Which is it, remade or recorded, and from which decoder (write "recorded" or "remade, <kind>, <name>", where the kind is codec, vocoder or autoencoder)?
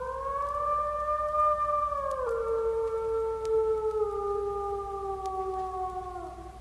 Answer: recorded